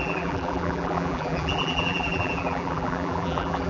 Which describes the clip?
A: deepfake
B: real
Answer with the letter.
A